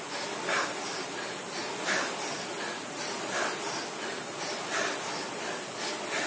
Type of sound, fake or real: real